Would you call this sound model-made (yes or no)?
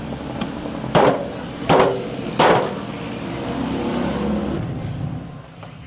no